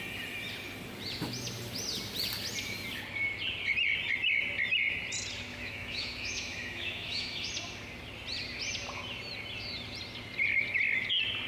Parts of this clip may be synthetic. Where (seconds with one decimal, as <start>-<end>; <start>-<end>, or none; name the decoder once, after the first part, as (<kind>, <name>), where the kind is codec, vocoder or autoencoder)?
5.5-7.5 (autoencoder, DAC-VAE)